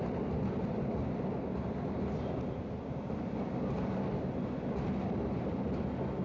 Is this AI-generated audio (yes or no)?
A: no